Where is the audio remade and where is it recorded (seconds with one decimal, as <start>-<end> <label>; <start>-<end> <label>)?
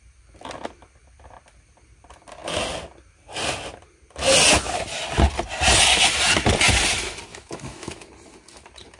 0.0-7.3 recorded; 7.3-8.1 remade; 8.1-9.0 recorded